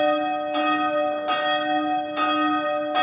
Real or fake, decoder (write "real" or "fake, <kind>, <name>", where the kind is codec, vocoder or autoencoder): real